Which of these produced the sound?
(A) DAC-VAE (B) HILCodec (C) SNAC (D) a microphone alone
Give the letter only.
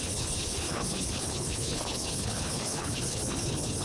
B